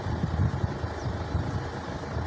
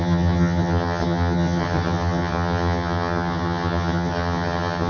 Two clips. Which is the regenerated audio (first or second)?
second